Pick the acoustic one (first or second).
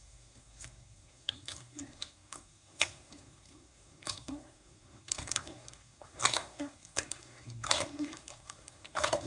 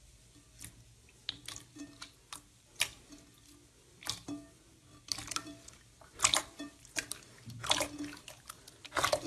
second